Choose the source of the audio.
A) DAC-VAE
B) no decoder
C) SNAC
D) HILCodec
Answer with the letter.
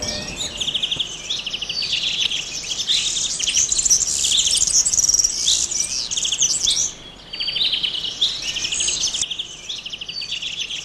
B